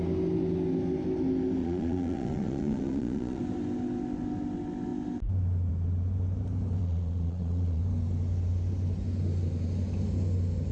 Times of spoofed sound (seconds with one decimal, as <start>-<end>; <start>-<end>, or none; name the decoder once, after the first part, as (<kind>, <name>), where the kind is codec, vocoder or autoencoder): 1.6-3.4 (vocoder, Vocos); 6.8-7.8

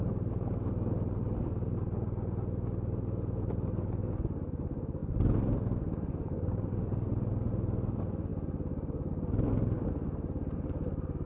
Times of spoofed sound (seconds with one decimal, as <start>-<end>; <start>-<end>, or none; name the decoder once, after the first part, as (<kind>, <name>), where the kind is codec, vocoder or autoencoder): 5.0-7.5 (vocoder, BigVGAN v2)

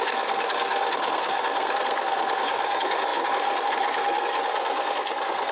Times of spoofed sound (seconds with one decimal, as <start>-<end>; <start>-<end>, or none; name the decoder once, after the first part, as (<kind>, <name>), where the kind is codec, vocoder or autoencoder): 0.0-5.5 (codec, SNAC)

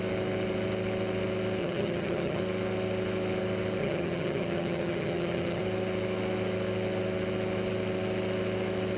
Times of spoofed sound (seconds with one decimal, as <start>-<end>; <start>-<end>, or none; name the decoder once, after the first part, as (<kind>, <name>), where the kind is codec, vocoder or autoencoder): 1.6-2.4 (vocoder, HiFi-GAN); 3.8-5.6

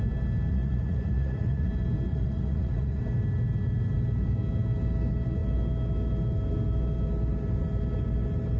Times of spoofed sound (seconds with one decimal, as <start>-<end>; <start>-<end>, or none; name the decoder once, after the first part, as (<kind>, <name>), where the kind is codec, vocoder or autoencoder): 0.5-1.7 (vocoder, Vocos); 2.1-3.0